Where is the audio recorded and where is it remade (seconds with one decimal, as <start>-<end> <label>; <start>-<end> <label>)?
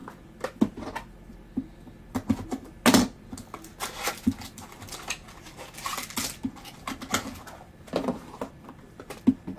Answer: 0.0-9.6 recorded